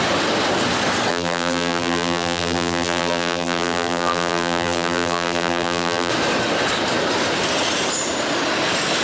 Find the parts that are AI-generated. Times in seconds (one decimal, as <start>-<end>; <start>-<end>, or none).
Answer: 1.1-6.1